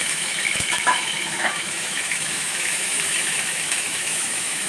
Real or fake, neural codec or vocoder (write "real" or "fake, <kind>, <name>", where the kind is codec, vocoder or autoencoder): fake, autoencoder, DAC-VAE